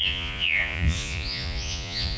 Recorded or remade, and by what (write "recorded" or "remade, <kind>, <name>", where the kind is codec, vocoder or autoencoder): remade, vocoder, Vocos